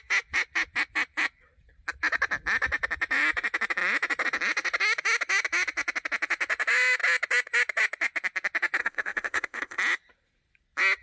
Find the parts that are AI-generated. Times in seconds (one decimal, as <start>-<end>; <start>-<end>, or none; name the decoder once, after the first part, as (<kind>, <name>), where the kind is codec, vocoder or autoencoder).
8.8-9.8 (codec, ZipCodec)